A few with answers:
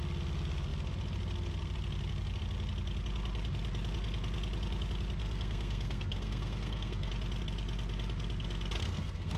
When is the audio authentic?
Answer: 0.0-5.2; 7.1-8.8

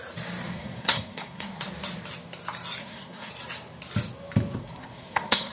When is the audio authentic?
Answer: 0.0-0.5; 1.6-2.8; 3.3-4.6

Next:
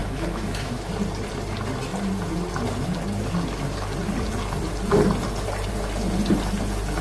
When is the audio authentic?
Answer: 0.9-7.0

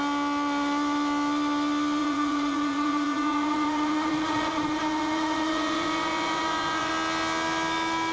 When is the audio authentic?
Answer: 0.0-2.0; 6.9-8.1

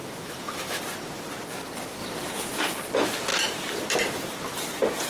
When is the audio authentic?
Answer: 0.8-5.1

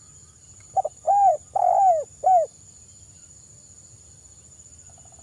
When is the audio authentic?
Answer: 0.0-5.2

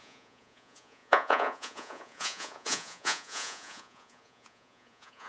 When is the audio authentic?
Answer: none